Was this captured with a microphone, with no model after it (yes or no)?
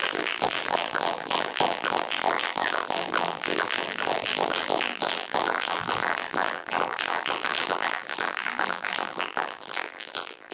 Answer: no